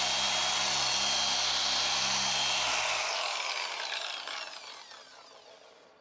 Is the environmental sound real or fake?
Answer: real